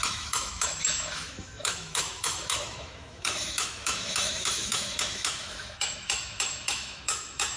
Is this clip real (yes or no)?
no